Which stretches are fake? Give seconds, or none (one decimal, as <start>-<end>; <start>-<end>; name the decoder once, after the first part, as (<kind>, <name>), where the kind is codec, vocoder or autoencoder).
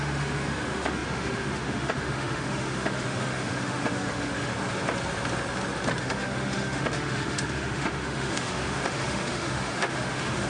0.0-4.5 (autoencoder, DAC-VAE); 6.0-10.5